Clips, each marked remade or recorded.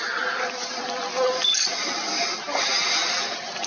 recorded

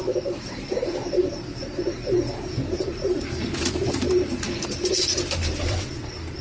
remade